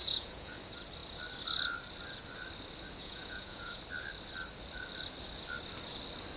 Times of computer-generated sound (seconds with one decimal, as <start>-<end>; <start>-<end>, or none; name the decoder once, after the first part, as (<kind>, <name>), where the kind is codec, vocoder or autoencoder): 0.0-0.5 (vocoder, Vocos); 3.0-3.8